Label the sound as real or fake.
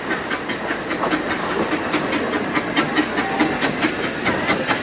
real